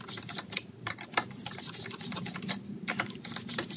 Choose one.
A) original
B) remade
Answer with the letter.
B